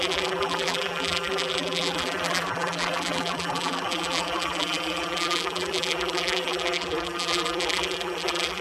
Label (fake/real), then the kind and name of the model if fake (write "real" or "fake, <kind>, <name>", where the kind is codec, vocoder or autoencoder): fake, vocoder, BigVGAN v2